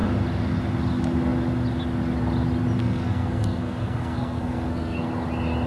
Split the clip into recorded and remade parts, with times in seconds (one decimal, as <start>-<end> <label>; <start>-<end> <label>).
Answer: 0.0-2.8 recorded; 2.8-5.1 remade; 5.1-5.7 recorded